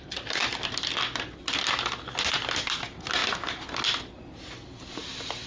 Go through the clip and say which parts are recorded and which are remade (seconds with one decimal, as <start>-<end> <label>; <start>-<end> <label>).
0.0-5.5 recorded

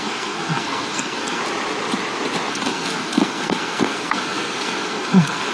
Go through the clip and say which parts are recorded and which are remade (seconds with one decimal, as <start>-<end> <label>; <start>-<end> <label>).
0.0-1.4 remade; 1.4-2.5 recorded; 2.5-5.5 remade